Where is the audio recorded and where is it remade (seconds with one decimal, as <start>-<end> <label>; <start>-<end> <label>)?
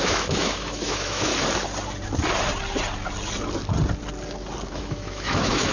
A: 0.0-1.3 remade; 1.3-4.7 recorded; 4.7-5.7 remade